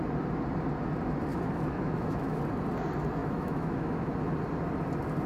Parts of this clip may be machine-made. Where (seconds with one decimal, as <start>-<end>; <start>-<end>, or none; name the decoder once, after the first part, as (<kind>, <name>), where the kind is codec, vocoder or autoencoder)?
1.3-2.4 (autoencoder, DAC-VAE); 3.2-4.1